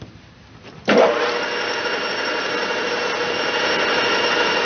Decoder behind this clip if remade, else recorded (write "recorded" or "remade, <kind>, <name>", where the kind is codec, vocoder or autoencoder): recorded